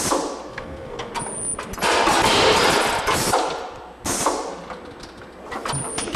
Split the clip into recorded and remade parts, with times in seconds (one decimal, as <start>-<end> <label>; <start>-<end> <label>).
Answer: 0.0-0.5 recorded; 0.5-1.1 remade; 1.1-6.2 recorded